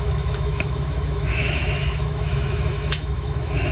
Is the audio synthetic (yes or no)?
yes